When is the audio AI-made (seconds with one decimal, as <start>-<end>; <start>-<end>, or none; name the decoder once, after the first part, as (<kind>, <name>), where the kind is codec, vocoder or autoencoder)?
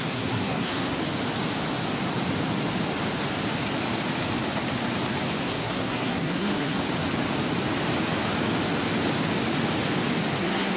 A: 0.0-1.0 (codec, SNAC); 5.4-6.8; 10.4-10.8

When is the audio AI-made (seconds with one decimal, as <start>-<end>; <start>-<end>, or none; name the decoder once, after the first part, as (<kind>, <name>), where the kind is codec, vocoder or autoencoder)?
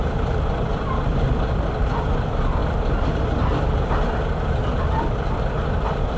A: none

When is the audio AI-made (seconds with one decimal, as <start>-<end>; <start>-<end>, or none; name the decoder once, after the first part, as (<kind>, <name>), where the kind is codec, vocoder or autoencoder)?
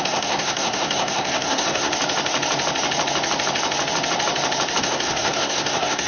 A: 0.0-1.9 (codec, SNAC); 4.8-6.1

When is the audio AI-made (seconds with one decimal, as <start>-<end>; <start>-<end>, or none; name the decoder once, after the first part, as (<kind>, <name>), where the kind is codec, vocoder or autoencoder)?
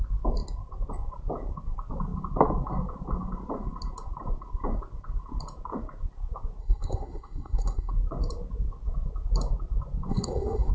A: 6.6-7.9 (codec, SNAC); 10.1-10.7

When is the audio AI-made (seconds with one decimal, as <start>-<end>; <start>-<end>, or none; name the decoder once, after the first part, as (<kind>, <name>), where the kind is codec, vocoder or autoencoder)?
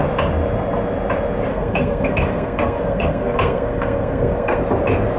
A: 1.5-4.6 (codec, SNAC)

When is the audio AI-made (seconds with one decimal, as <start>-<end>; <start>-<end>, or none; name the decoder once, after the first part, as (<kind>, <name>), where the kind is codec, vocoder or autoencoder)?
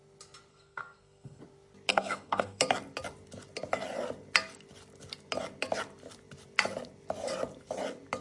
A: 0.5-1.4 (codec, SNAC); 1.9-2.6